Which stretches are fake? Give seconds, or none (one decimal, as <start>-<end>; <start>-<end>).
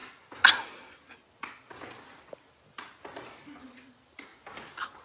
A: none